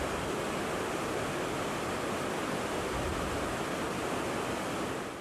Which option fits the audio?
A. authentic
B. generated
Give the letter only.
A